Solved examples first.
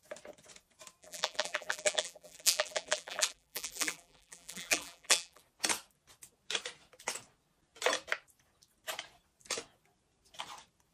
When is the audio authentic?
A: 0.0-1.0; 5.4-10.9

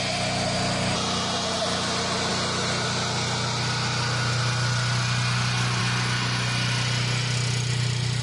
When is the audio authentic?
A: 0.0-8.2

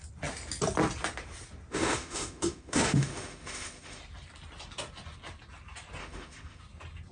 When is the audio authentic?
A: 0.0-1.7; 4.0-6.0; 6.6-7.1

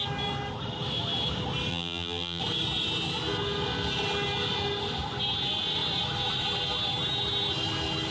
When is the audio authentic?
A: 0.0-1.7; 2.4-8.1

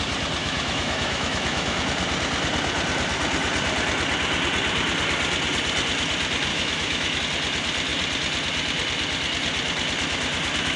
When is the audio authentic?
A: 0.0-0.4; 1.8-6.5; 7.2-10.8

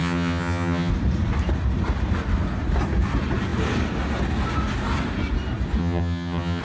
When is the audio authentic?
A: 0.9-5.8

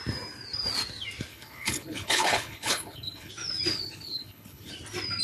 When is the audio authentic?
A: 0.0-1.3; 3.3-3.7; 4.7-5.2

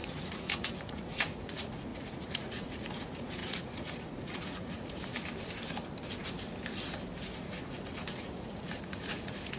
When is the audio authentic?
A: 5.1-7.5